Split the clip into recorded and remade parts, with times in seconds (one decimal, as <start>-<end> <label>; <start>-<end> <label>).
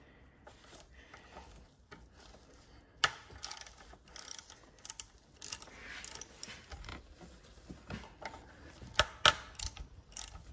0.0-10.5 recorded